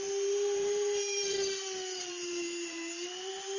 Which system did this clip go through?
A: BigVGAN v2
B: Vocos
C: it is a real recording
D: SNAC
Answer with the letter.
A